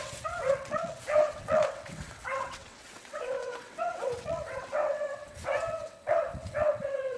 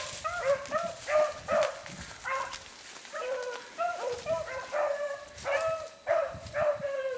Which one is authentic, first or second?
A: second